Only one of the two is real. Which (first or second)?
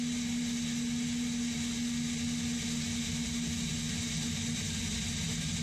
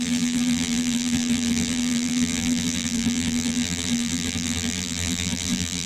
first